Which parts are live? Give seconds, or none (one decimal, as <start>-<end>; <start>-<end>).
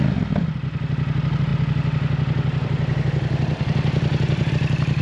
0.0-1.5; 4.5-5.0